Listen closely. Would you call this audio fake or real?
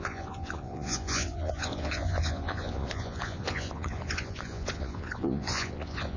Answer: fake